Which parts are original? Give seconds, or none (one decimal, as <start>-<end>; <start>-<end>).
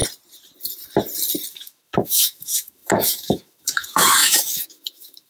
0.0-1.5